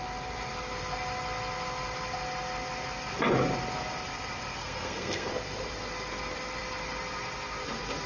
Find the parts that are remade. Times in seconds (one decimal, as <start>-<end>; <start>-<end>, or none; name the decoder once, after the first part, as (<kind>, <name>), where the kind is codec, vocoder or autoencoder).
4.6-5.3 (codec, SNAC)

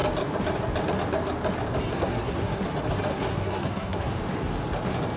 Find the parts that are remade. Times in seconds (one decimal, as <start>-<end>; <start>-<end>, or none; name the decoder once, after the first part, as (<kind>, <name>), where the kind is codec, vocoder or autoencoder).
1.9-2.6 (codec, SNAC); 3.1-4.1

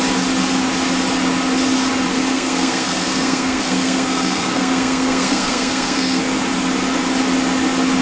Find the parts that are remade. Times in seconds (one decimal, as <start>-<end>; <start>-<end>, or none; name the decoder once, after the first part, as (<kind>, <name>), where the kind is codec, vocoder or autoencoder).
2.1-6.2 (codec, SNAC)

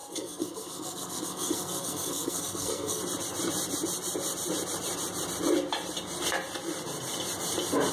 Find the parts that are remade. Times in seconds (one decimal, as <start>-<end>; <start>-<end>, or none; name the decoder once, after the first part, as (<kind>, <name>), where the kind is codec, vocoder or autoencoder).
0.0-3.0 (codec, SNAC)

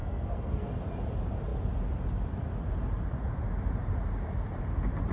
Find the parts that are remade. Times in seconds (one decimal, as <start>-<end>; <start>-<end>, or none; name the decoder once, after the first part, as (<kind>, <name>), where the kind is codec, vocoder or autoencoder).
0.0-0.7 (codec, SNAC)

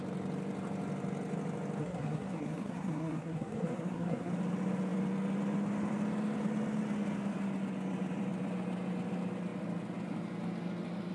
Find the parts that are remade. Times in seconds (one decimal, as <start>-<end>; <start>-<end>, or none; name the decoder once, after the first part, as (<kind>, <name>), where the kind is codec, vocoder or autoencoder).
1.8-4.3 (codec, SNAC)

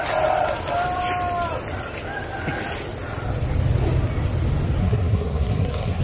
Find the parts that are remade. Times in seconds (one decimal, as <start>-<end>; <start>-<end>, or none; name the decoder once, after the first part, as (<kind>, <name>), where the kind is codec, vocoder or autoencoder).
4.8-6.0 (codec, SNAC)